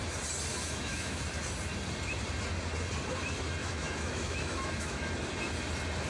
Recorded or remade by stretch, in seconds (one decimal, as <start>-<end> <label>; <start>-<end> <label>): 0.0-0.5 recorded; 0.5-1.2 remade; 1.2-3.6 recorded; 3.6-5.1 remade; 5.1-6.1 recorded